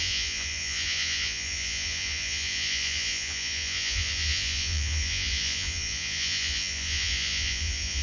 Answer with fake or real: fake